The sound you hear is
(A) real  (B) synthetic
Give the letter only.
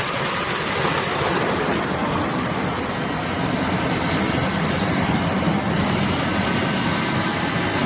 A